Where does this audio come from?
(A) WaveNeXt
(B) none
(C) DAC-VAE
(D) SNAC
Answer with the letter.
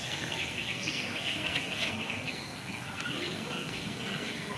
D